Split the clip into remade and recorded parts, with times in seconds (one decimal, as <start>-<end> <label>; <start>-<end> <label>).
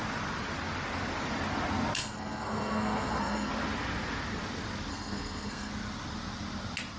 0.0-2.0 recorded; 2.0-3.5 remade; 3.5-4.9 recorded; 4.9-5.7 remade; 5.7-7.0 recorded